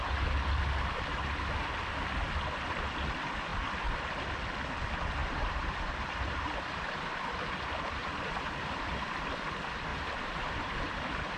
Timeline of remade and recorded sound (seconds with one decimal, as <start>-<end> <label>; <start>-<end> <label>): 0.0-5.2 recorded; 5.2-6.8 remade; 6.8-8.0 recorded; 8.0-9.0 remade; 9.0-9.9 recorded; 9.9-11.4 remade